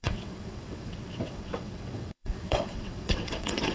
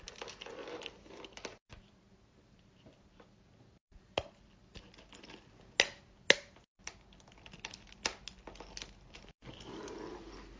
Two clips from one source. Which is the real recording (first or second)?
second